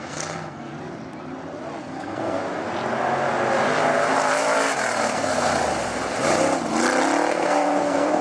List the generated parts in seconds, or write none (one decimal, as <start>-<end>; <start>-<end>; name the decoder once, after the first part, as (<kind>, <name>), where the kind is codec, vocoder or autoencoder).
0.0-0.7 (codec, SNAC); 1.8-2.4; 5.0-5.5; 7.3-8.2